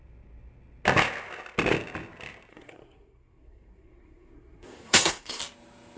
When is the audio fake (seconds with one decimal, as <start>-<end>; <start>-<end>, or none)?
2.5-5.4